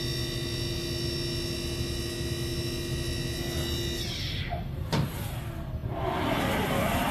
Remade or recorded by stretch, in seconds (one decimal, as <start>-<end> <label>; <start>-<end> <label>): 0.0-7.1 recorded